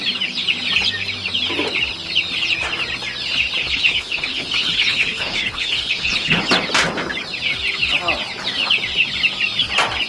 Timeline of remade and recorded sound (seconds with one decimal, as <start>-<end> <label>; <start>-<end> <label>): 0.0-3.6 recorded; 3.6-6.5 remade; 6.5-10.1 recorded